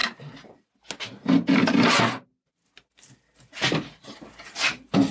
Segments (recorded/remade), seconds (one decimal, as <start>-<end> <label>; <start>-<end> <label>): 0.0-5.1 recorded